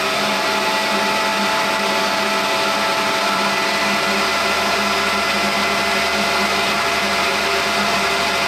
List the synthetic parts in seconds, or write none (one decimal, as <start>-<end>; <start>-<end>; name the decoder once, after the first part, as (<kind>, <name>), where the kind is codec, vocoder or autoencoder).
none